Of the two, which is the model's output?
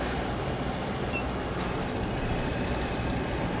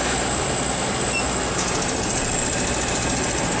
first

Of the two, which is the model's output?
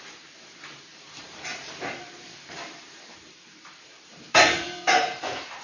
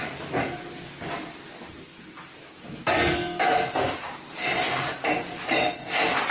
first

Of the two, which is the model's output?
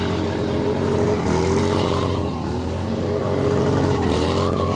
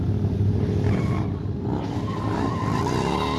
first